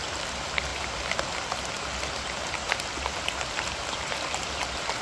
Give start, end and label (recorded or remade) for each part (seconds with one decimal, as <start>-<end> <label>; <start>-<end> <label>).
0.0-5.0 recorded